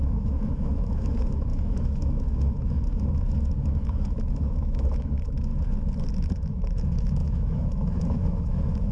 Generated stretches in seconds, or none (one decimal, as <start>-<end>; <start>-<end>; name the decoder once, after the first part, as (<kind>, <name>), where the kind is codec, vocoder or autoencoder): 0.0-5.5 (autoencoder, DAC-VAE); 6.1-8.9